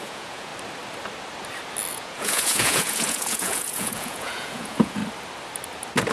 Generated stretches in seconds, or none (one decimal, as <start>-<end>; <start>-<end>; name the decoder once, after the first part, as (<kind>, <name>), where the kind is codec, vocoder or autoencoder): 0.0-0.5 (vocoder, Vocos); 1.9-5.0